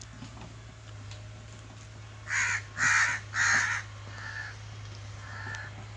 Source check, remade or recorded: recorded